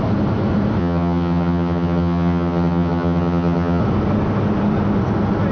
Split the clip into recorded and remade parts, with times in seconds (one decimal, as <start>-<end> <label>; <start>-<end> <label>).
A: 0.0-0.8 recorded; 0.8-3.8 remade; 3.8-5.5 recorded